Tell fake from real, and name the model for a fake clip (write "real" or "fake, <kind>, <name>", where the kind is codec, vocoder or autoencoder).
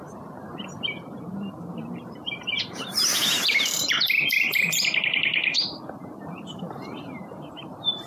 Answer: fake, vocoder, BigVGAN v2